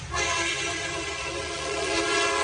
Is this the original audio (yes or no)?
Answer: no